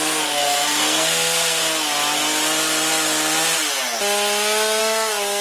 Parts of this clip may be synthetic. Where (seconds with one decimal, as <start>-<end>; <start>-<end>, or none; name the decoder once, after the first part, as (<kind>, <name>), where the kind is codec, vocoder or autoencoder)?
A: 0.0-1.6 (codec, SNAC); 4.8-5.4